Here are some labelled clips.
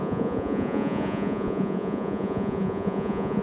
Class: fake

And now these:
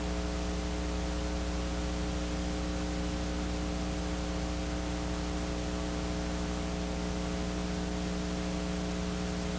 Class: real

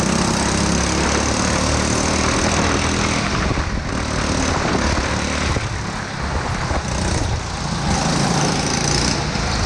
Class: real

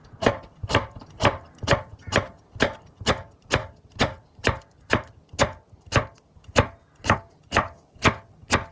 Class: real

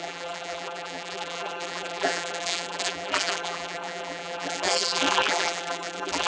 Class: fake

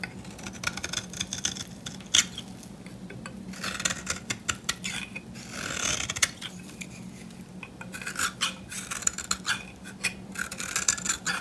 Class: real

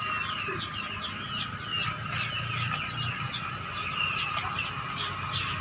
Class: real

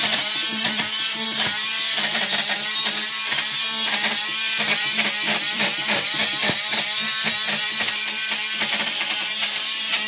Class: fake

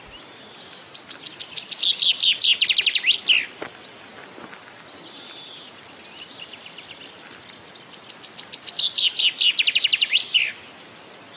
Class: real